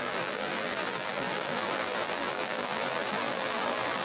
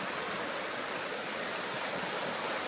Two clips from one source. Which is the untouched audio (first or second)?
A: second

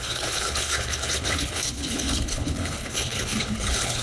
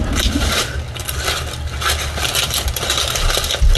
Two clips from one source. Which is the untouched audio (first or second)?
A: second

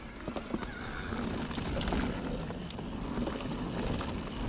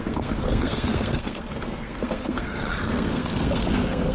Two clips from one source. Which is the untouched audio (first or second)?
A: first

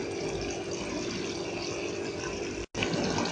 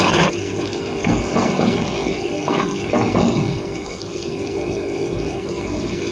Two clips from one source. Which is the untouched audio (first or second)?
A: first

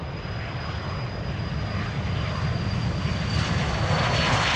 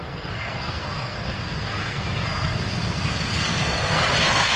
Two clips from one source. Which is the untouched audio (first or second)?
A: first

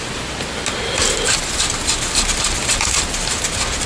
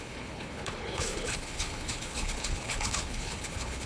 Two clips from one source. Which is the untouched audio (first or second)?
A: first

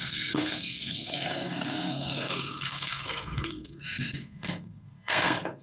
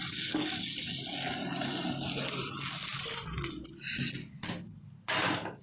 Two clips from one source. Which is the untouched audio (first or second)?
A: second